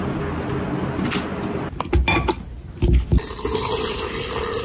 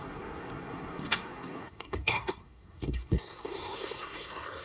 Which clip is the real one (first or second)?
first